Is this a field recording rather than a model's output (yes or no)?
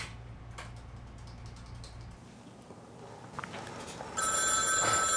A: yes